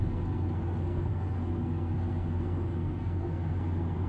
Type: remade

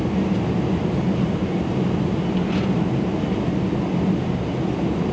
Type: recorded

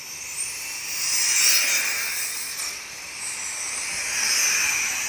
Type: recorded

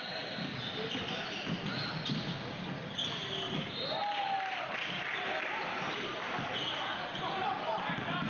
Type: recorded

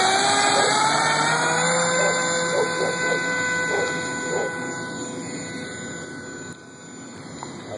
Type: recorded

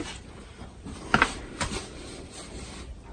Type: recorded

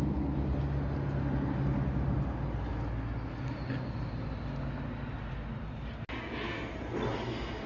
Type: recorded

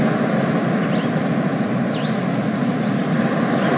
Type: recorded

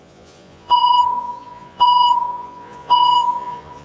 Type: remade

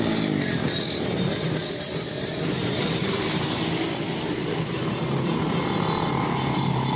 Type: remade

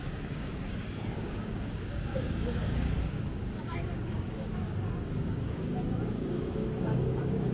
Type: remade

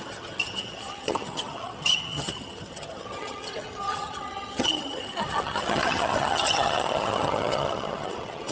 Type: remade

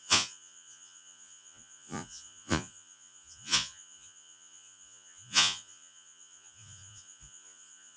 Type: remade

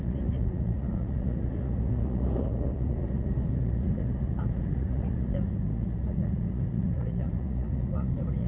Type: remade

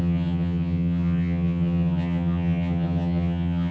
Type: remade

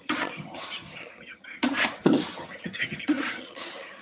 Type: remade